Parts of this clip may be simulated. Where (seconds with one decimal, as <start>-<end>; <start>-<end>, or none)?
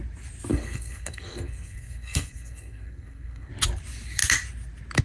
0.5-3.5